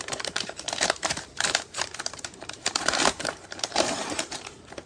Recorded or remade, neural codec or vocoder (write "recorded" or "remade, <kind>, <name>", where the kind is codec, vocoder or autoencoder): remade, vocoder, BigVGAN v2